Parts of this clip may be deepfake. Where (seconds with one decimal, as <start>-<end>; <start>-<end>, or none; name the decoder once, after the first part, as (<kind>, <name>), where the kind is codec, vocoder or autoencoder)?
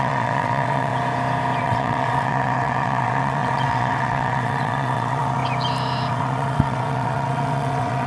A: 0.0-0.9 (vocoder, WaveNeXt); 1.6-5.4; 6.1-8.1